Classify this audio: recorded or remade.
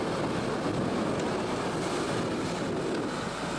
recorded